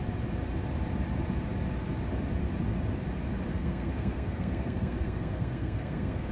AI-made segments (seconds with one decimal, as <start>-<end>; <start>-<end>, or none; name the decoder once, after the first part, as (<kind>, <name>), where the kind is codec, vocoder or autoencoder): 3.5-6.3 (codec, SNAC)